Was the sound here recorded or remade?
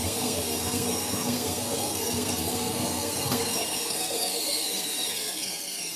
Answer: remade